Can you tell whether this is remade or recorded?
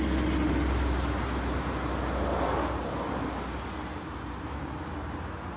recorded